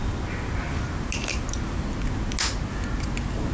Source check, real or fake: real